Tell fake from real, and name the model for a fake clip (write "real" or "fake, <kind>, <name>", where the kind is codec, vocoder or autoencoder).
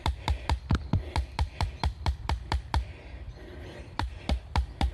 fake, vocoder, BigVGAN v2